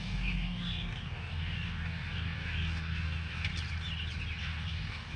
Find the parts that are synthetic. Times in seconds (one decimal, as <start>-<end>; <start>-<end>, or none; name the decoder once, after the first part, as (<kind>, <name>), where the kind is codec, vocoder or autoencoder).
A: 0.0-3.5 (codec, DAC); 4.4-5.2